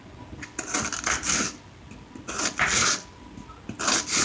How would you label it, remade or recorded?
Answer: recorded